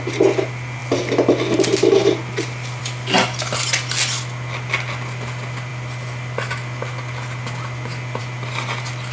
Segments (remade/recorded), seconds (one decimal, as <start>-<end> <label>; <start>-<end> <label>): 0.0-9.1 recorded